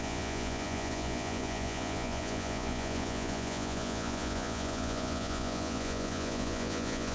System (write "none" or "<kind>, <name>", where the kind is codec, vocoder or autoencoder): vocoder, Vocos